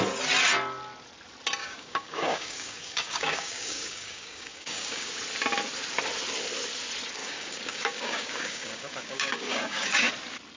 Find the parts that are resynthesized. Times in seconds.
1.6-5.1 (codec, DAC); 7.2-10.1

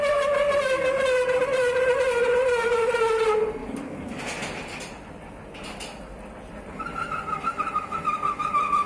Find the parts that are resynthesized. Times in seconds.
3.6-4.2 (codec, DAC)

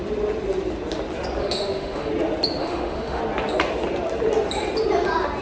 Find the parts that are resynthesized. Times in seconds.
1.4-2.1 (autoencoder, DAC-VAE); 2.6-3.2

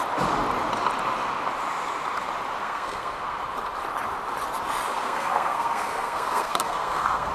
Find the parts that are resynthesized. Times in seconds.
2.6-3.4 (codec, SNAC); 4.9-7.3